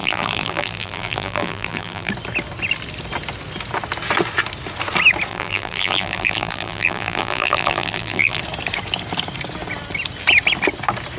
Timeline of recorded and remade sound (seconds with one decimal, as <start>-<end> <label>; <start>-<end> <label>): 0.0-2.1 remade; 2.1-5.3 recorded; 5.3-8.4 remade; 8.4-11.2 recorded